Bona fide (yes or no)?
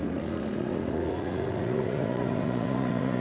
no